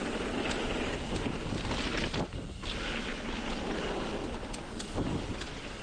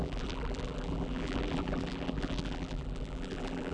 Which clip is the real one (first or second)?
first